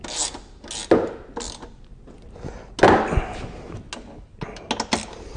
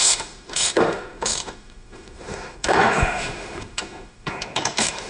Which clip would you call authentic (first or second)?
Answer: first